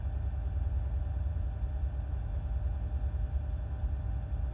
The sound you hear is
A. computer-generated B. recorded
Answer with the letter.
B